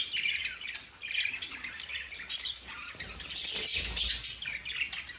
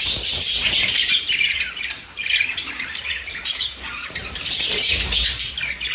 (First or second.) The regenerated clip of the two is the second